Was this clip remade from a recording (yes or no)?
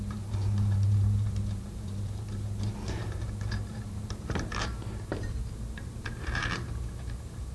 yes